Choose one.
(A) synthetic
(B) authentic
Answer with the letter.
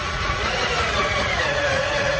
A